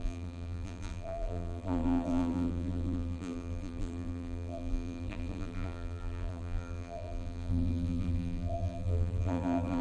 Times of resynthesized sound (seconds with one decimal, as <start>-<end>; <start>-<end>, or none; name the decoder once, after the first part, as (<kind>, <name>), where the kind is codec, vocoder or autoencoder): 0.0-9.8 (vocoder, BigVGAN v2)